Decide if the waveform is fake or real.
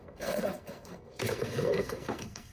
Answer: fake